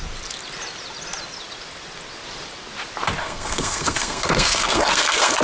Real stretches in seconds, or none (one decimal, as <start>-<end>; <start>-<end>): 0.0-3.2